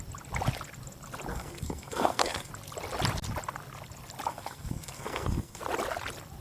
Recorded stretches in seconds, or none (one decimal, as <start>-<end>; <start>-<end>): 0.0-1.3; 2.5-4.3; 5.6-6.4